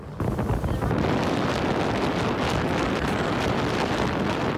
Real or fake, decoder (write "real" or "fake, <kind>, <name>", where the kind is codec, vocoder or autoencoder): real